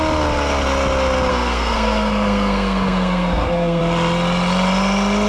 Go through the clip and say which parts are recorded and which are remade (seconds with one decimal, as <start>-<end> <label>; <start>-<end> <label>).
0.0-1.3 recorded; 1.3-3.8 remade; 3.8-5.3 recorded